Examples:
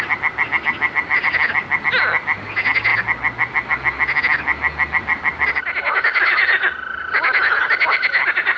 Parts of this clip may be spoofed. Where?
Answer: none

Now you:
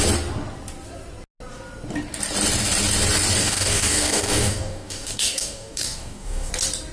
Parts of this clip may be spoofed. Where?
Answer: 3.4-6.5

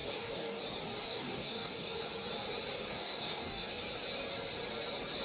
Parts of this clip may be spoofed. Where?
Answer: 0.0-0.6; 1.0-2.1; 2.9-3.7

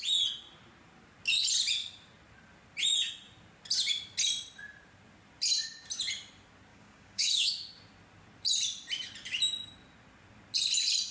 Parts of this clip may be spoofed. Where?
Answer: 6.7-7.5

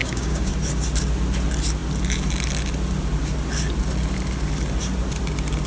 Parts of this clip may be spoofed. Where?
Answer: 0.0-0.5